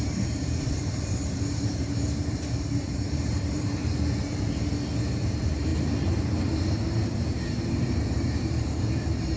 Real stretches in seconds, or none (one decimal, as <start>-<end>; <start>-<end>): 3.9-5.0